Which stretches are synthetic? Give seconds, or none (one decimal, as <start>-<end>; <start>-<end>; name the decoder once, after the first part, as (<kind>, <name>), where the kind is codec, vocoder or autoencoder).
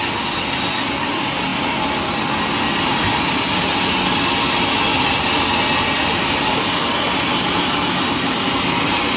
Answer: none